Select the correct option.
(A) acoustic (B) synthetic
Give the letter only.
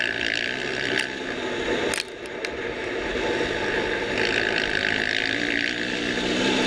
A